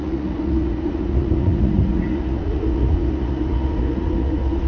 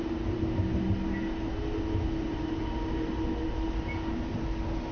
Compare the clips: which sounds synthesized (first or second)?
first